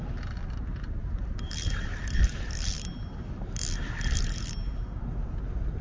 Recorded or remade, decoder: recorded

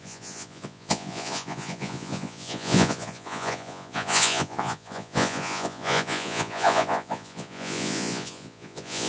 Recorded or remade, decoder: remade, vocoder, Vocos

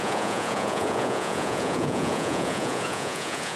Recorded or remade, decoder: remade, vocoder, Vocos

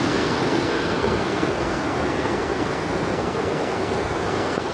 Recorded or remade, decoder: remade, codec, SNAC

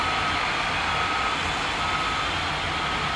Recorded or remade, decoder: recorded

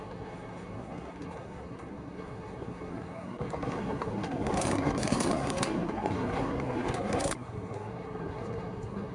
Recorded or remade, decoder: remade, codec, SNAC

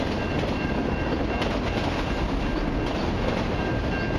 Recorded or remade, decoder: recorded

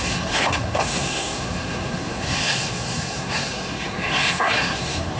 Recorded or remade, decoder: remade, codec, SNAC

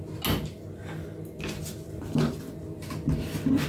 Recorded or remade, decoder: recorded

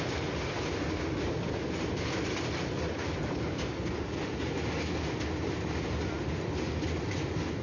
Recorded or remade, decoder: recorded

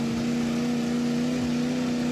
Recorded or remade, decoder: recorded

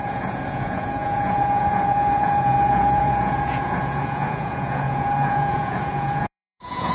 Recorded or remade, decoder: remade, vocoder, Vocos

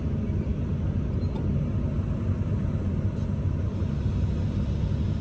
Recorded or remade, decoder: recorded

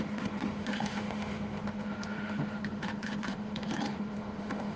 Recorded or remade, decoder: remade, autoencoder, DAC-VAE